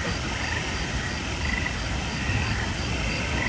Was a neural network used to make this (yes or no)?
yes